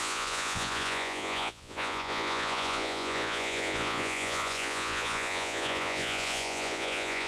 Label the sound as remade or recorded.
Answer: remade